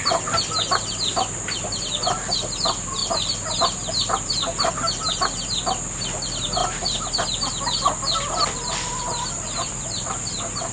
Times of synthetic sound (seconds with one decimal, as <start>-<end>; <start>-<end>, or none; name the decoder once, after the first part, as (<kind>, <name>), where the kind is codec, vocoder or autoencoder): 6.6-9.0 (vocoder, BigVGAN v2)